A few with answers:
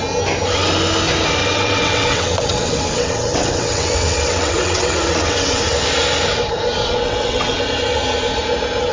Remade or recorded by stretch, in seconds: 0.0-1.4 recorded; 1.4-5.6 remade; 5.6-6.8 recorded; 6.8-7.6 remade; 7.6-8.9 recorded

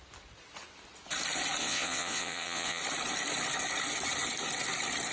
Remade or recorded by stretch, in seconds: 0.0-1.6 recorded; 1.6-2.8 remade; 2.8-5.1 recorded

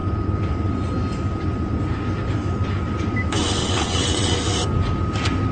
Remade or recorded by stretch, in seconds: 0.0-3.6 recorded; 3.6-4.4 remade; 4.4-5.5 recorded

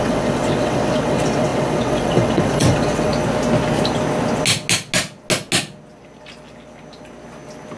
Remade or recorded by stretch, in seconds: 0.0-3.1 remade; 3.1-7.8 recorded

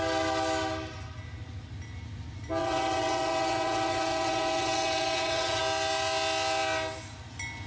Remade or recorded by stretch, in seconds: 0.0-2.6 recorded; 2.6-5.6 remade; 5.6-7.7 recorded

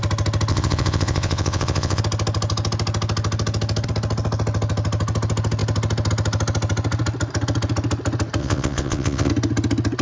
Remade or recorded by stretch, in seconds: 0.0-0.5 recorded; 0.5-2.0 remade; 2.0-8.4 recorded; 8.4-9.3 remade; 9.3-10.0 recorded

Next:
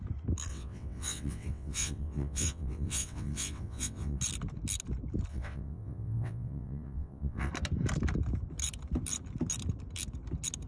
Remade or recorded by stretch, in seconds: 0.0-0.5 recorded; 0.5-4.2 remade; 4.2-5.3 recorded; 5.3-7.5 remade; 7.5-10.7 recorded

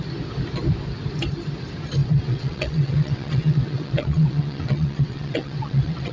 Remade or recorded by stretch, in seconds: 0.0-2.0 recorded; 2.0-6.1 remade